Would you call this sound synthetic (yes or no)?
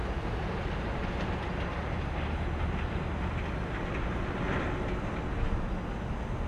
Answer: no